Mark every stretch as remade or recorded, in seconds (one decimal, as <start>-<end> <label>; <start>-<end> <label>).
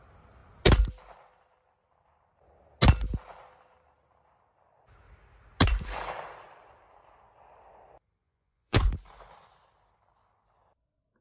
0.0-8.2 recorded; 8.2-8.9 remade; 8.9-11.2 recorded